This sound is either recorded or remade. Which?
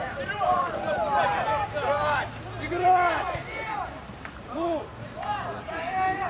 recorded